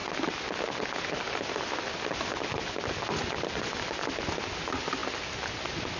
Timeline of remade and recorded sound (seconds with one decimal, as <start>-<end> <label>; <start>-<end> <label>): 0.0-6.0 recorded